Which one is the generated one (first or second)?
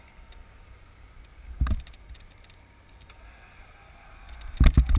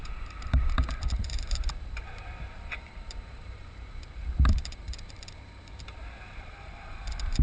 second